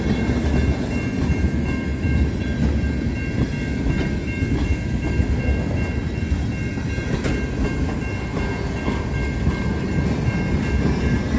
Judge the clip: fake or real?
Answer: real